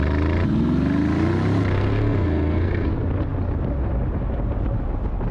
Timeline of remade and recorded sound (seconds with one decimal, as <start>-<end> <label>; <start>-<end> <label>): 0.0-1.6 recorded; 1.6-2.9 remade; 2.9-5.3 recorded